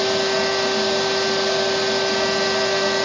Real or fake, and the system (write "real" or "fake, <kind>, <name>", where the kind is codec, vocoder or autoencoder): real